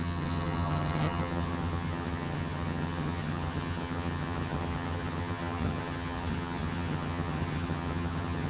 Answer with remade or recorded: remade